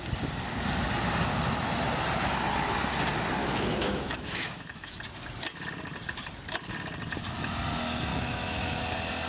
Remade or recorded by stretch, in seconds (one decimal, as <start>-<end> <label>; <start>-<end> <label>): 0.0-3.4 recorded; 3.4-5.0 remade; 5.0-8.1 recorded; 8.1-8.8 remade; 8.8-9.3 recorded